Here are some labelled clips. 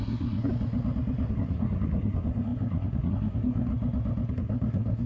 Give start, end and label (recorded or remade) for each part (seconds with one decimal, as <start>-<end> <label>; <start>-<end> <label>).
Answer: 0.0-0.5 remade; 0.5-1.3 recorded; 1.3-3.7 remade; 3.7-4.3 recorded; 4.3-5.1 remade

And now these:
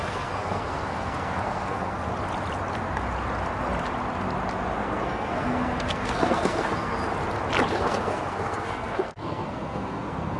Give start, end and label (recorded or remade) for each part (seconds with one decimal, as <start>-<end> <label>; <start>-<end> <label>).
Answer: 0.0-2.1 remade; 2.1-4.8 recorded; 4.8-7.0 remade; 7.0-7.7 recorded; 7.7-10.4 remade

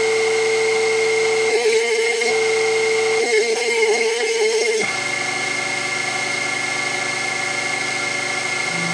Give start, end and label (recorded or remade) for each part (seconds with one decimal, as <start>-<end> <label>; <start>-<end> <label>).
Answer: 0.0-1.5 recorded; 1.5-2.3 remade; 2.3-3.2 recorded; 3.2-4.9 remade; 4.9-8.9 recorded

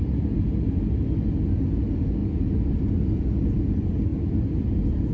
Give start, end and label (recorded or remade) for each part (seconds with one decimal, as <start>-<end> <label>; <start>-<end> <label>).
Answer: 0.0-5.1 recorded

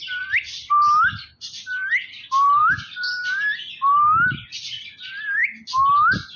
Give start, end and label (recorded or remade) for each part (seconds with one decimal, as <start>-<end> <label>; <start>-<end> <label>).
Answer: 0.0-6.4 recorded

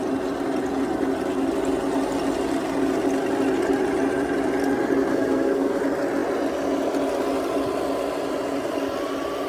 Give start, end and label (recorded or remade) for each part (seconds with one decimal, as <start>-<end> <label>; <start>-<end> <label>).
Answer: 0.0-5.1 recorded; 5.1-5.8 remade; 5.8-9.5 recorded

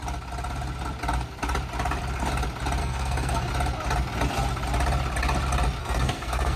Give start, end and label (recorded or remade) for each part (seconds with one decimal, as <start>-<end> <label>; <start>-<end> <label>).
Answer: 0.0-2.8 recorded; 2.8-3.5 remade; 3.5-5.8 recorded; 5.8-6.6 remade